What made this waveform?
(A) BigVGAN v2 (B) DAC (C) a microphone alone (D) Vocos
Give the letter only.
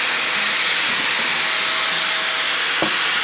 C